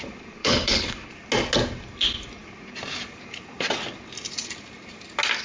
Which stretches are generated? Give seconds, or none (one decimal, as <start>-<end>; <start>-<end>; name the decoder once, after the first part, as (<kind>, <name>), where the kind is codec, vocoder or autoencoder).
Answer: 0.4-1.1 (codec, HILCodec)